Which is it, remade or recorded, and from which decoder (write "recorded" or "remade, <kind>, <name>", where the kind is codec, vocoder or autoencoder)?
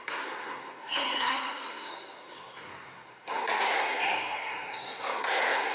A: remade, codec, SNAC